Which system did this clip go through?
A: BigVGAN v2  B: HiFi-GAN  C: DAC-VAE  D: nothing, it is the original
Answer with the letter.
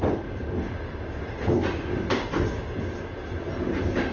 D